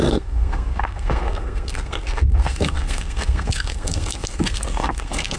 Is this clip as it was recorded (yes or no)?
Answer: no